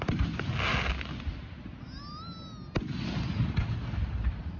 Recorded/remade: recorded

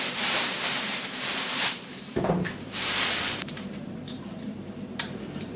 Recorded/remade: remade